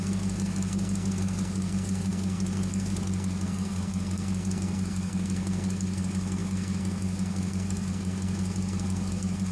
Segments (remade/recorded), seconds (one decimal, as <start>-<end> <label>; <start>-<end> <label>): 0.0-9.5 remade